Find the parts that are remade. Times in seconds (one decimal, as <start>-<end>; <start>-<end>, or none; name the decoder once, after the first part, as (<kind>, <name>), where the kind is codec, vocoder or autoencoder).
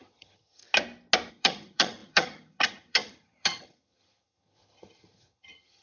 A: 0.0-0.6 (vocoder, HiFi-GAN); 1.3-5.8